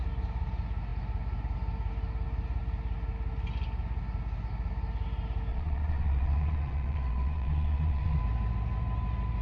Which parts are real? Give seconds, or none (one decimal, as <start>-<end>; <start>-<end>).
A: 0.0-5.5; 8.2-9.4